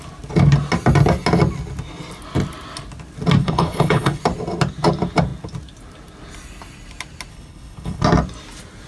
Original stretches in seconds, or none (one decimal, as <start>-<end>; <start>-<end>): 0.0-3.4; 4.2-7.3; 8.0-8.9